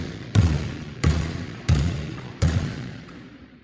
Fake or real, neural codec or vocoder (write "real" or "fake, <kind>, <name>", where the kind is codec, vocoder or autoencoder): fake, vocoder, Vocos